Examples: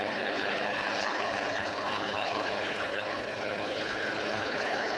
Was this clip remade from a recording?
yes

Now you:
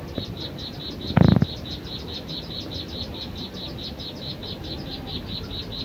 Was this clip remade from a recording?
no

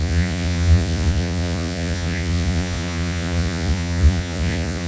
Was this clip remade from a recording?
yes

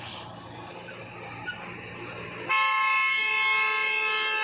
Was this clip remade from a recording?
no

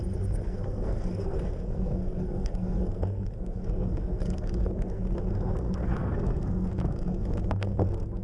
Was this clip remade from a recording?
yes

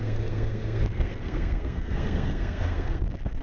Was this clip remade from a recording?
yes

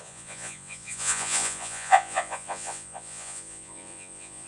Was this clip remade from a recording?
yes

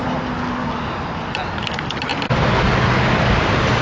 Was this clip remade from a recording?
no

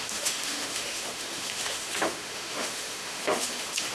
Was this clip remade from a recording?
yes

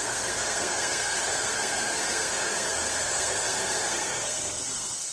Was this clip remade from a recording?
yes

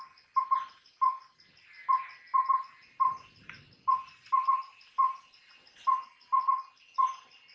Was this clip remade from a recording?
no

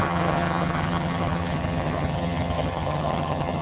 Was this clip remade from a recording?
yes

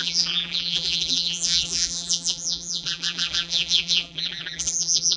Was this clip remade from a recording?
yes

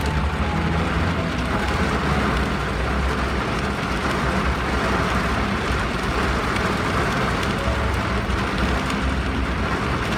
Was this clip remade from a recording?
no